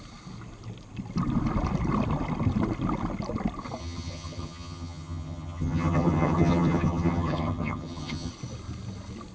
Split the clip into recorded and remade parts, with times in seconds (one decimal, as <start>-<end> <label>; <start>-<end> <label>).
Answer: 0.0-3.8 recorded; 3.8-8.3 remade; 8.3-9.3 recorded